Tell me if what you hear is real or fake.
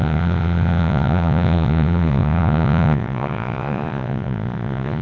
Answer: fake